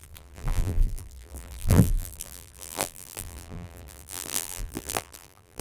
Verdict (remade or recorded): remade